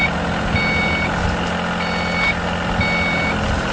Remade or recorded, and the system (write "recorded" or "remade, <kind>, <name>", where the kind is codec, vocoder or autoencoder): recorded